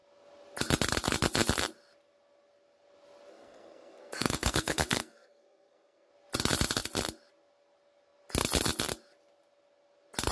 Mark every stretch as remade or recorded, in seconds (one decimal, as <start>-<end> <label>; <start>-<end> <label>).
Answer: 0.0-3.3 recorded; 3.3-6.1 remade; 6.1-10.3 recorded